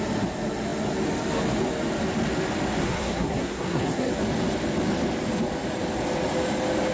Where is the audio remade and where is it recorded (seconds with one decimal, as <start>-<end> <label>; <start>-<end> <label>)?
0.0-2.8 recorded; 2.8-4.1 remade; 4.1-6.9 recorded